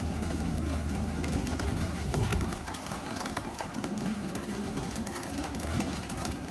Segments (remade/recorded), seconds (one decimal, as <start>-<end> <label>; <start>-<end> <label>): 0.0-6.5 remade